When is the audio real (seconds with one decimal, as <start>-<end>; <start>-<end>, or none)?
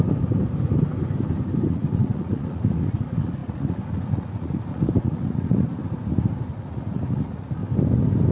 0.0-1.7; 5.8-6.5; 7.6-8.3